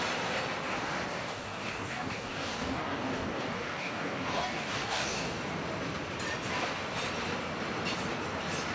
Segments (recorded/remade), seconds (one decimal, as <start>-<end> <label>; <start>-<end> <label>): 0.0-1.1 recorded; 1.1-5.4 remade; 5.4-8.7 recorded